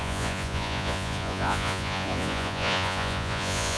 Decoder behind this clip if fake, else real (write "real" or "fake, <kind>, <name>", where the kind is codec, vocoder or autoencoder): fake, vocoder, Vocos